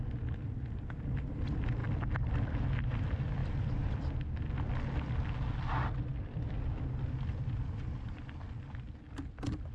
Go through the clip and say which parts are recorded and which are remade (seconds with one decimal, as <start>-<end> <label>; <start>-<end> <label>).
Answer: 0.0-1.8 recorded; 1.8-2.5 remade; 2.5-3.4 recorded; 3.4-4.1 remade; 4.1-6.1 recorded; 6.1-8.3 remade; 8.3-9.7 recorded